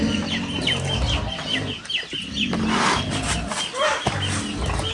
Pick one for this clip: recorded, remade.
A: recorded